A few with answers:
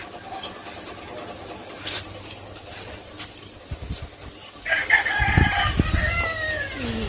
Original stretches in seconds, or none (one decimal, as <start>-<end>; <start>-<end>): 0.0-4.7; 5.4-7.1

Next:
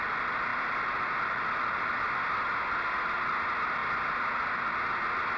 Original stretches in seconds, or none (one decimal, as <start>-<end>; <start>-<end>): 0.0-0.5; 2.8-5.4

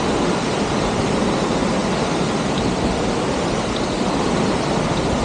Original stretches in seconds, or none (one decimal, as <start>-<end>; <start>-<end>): 0.0-5.2

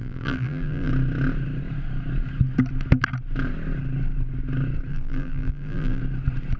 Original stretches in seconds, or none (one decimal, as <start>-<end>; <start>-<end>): 0.9-4.9; 6.0-6.6